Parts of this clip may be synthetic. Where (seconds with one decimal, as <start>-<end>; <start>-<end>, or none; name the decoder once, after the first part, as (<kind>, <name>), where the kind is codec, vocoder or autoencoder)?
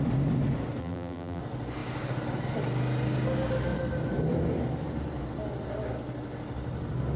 0.8-1.4 (vocoder, BigVGAN v2)